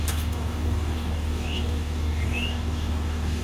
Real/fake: fake